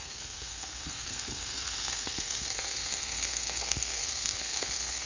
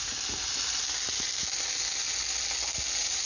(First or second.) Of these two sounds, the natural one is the second